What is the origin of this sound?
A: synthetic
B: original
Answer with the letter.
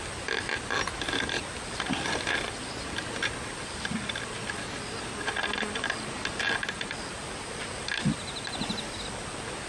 B